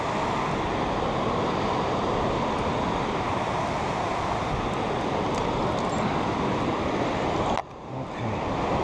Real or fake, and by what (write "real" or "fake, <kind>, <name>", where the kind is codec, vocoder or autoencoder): real